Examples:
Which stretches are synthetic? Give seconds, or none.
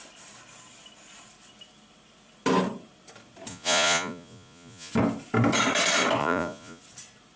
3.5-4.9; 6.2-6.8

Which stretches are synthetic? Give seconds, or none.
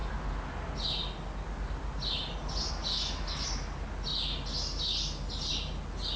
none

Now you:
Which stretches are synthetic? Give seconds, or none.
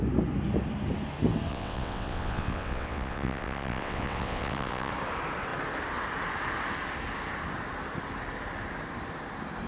1.5-4.9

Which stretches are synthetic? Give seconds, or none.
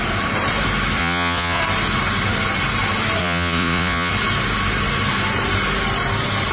1.0-1.6; 3.2-4.1